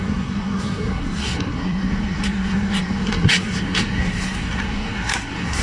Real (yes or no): no